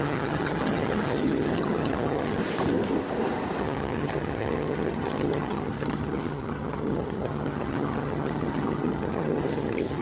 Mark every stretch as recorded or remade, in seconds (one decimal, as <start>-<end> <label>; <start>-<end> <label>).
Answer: 0.0-2.4 remade; 2.4-3.6 recorded; 3.6-10.0 remade